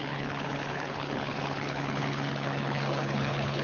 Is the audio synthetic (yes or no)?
yes